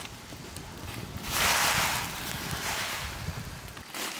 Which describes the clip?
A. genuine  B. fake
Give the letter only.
A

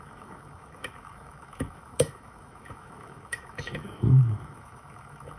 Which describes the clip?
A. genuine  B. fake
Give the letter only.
B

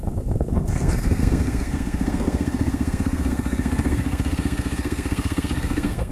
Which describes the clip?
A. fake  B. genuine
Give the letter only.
A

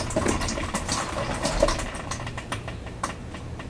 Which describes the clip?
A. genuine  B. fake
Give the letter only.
B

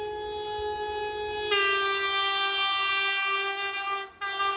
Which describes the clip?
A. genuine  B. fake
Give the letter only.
A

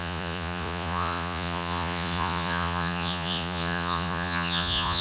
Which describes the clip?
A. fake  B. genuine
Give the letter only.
A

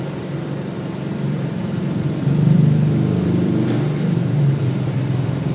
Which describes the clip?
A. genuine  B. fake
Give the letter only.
B